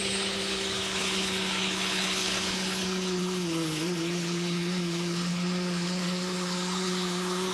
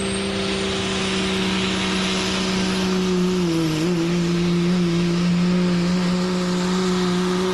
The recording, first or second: second